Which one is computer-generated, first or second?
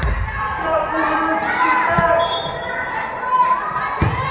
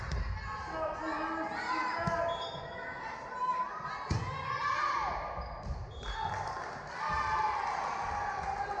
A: first